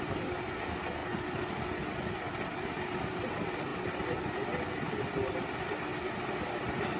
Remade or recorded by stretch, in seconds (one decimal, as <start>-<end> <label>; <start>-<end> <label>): 0.0-7.0 recorded